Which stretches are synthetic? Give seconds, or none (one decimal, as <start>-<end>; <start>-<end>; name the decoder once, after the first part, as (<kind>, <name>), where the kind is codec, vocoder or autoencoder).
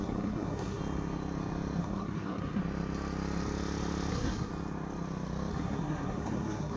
0.0-0.8 (codec, SNAC); 1.8-2.6; 4.1-4.5; 5.5-6.8